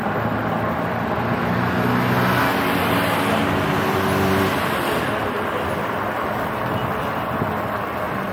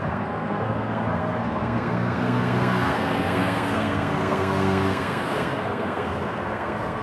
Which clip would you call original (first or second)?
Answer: first